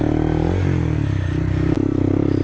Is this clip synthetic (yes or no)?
no